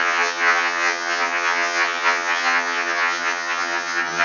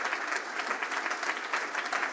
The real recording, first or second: second